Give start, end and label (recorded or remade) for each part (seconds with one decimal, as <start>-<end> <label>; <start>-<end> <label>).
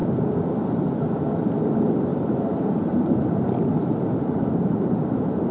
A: 0.0-0.9 remade; 0.9-2.1 recorded; 2.1-5.5 remade